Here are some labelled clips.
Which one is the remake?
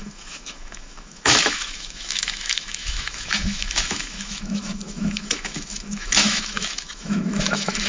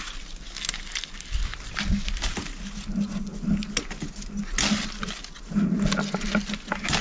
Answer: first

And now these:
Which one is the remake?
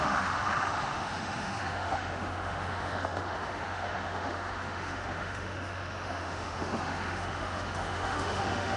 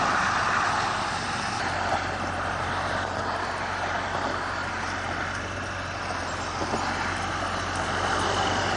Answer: first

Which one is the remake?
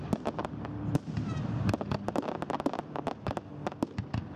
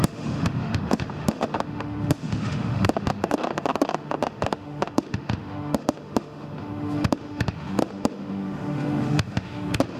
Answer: second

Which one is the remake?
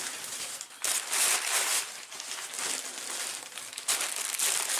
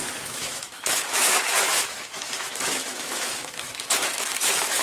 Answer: second